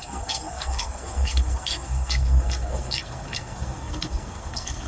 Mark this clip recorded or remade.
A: remade